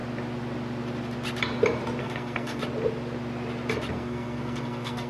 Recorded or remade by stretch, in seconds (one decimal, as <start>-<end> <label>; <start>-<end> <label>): 0.0-2.0 recorded; 2.0-2.6 remade; 2.6-3.9 recorded; 3.9-5.1 remade